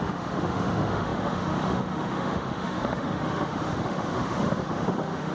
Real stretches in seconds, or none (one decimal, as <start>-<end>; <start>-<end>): none